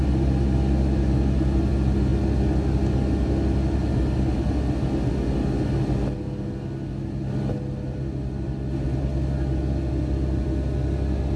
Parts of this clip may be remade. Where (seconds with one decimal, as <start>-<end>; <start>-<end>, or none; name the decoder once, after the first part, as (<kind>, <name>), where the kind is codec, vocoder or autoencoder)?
none